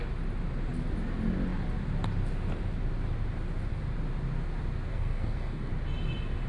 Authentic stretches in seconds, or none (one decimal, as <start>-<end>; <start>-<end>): 0.0-4.9; 5.7-6.5